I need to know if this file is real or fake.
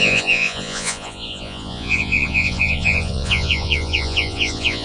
fake